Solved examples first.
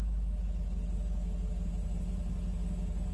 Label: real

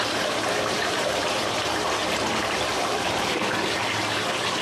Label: fake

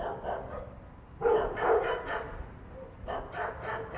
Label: real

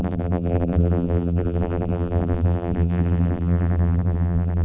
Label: fake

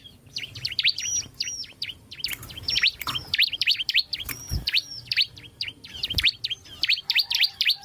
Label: fake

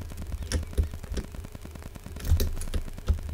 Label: real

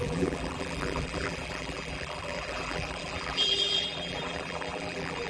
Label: fake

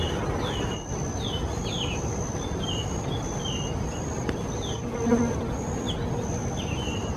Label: real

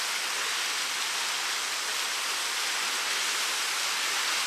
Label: real